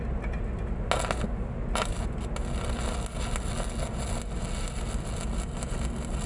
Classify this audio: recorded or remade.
recorded